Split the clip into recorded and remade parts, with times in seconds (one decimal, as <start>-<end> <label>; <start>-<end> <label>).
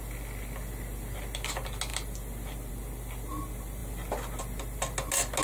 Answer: 0.0-5.4 recorded